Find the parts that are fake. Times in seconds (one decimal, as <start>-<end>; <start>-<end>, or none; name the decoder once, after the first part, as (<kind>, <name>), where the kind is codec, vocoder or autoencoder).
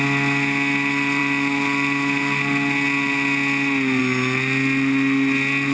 none